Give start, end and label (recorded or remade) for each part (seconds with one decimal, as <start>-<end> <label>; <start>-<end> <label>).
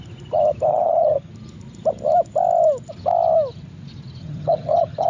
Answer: 0.0-0.7 recorded; 0.7-1.3 remade; 1.3-4.2 recorded; 4.2-5.1 remade